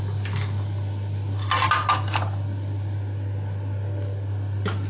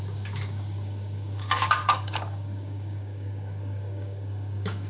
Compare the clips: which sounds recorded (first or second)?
first